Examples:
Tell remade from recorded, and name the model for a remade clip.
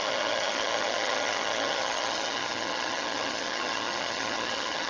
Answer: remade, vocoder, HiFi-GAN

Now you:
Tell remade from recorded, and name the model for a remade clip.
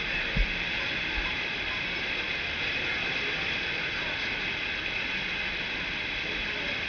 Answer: recorded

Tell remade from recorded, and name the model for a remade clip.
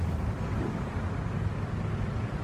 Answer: recorded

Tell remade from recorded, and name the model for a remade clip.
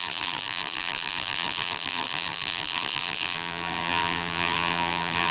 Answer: remade, vocoder, BigVGAN v2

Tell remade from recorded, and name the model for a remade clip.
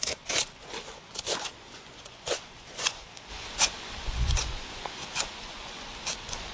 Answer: remade, vocoder, Vocos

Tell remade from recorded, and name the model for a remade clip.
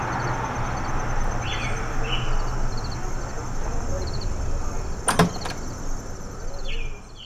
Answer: recorded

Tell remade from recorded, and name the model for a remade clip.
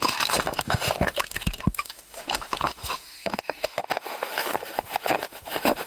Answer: remade, autoencoder, DAC-VAE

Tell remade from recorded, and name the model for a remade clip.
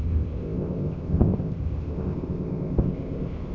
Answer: remade, codec, ZipCodec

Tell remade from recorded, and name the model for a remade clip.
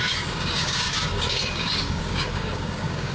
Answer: remade, codec, DAC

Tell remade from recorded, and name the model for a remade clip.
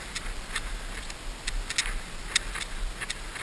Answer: recorded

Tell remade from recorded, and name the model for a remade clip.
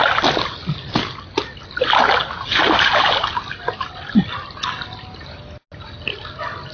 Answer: recorded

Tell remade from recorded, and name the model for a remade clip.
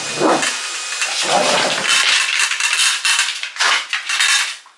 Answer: recorded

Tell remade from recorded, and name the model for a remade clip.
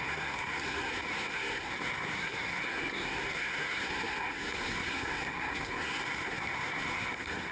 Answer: remade, codec, SNAC